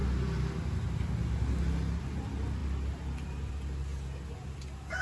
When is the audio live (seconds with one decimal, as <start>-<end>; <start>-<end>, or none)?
0.0-5.0